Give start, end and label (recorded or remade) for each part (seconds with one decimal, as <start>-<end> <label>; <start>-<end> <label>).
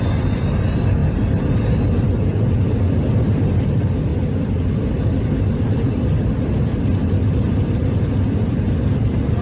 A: 0.0-9.4 recorded